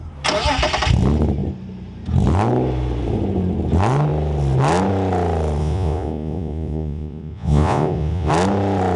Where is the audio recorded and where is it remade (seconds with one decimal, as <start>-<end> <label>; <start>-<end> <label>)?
0.0-5.6 recorded; 5.6-8.3 remade; 8.3-9.0 recorded